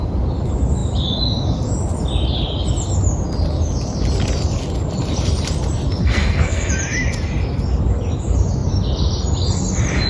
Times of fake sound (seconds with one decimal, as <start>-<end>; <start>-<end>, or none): 6.0-6.7